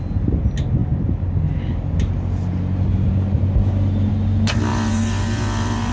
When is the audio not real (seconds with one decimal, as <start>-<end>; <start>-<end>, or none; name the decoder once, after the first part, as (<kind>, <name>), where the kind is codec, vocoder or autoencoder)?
4.7-5.9 (vocoder, BigVGAN v2)